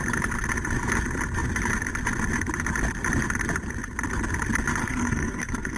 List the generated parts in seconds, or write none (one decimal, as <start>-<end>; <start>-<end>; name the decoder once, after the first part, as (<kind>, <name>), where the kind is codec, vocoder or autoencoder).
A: 4.8-5.8 (codec, SNAC)